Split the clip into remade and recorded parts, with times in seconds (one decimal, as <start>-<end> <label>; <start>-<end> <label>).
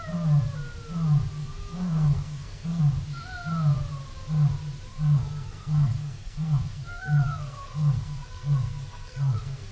0.0-1.4 recorded; 1.4-2.8 remade; 2.8-4.9 recorded; 4.9-9.7 remade